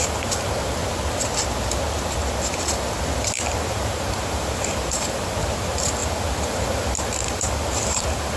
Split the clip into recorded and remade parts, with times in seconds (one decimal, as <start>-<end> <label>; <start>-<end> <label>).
0.0-0.8 remade; 0.8-3.5 recorded; 3.5-8.4 remade